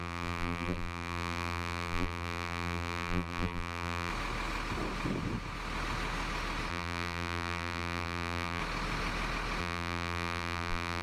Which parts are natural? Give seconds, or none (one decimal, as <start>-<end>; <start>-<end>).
4.1-6.7; 8.6-9.6